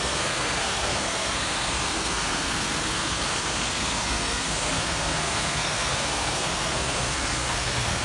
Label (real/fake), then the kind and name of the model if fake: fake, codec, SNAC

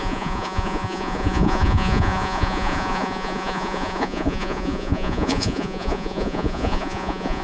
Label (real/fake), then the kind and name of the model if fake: fake, vocoder, Vocos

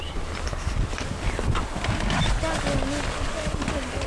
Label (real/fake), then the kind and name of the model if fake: real